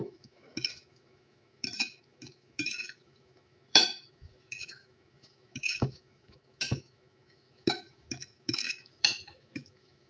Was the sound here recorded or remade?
remade